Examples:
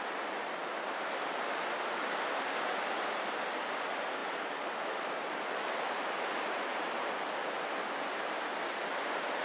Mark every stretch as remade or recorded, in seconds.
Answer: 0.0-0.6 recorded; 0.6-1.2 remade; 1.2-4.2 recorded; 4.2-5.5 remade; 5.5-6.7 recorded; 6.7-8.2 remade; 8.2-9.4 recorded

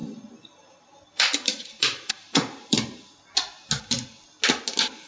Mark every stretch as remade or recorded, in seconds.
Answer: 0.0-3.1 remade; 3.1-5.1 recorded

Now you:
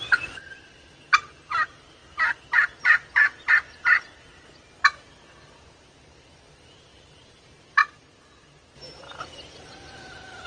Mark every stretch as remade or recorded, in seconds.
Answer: 0.0-2.0 remade; 2.0-6.0 recorded; 6.0-7.8 remade; 7.8-9.2 recorded; 9.2-10.5 remade